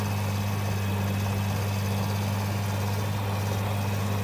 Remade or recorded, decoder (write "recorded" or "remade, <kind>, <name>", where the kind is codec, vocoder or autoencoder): recorded